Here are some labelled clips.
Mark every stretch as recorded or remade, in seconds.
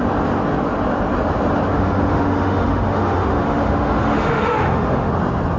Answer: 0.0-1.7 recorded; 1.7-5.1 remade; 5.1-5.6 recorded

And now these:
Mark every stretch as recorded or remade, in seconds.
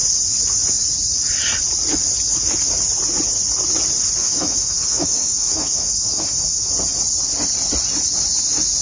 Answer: 0.0-4.2 recorded; 4.2-6.7 remade; 6.7-8.8 recorded